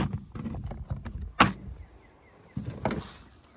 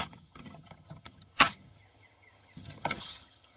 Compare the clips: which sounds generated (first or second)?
second